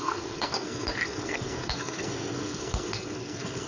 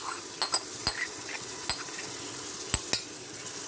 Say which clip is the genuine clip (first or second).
second